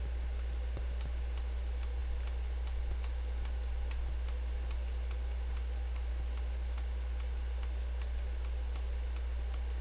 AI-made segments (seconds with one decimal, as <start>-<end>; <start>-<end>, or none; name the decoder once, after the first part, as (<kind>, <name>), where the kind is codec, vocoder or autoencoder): none